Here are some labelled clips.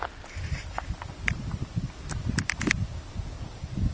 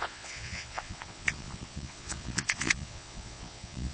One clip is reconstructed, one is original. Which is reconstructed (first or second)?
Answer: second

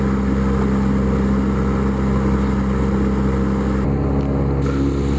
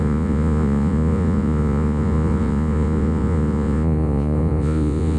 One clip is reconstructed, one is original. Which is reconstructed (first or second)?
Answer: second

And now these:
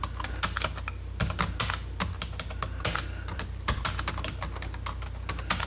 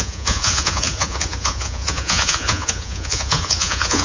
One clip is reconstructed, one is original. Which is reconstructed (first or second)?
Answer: second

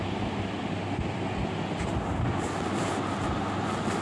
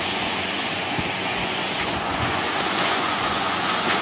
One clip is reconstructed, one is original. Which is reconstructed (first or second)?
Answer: second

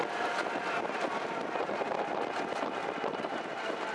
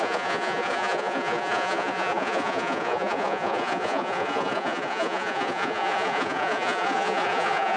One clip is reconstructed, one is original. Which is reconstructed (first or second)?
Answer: second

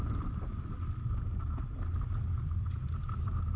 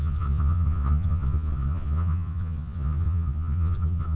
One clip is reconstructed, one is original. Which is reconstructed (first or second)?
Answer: second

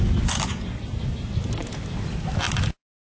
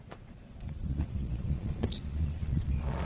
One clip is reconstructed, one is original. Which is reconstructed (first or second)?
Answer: second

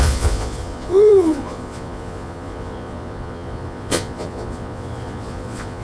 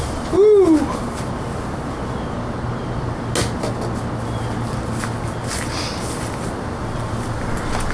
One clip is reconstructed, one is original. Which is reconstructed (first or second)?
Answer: first